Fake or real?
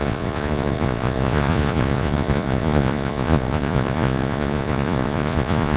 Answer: fake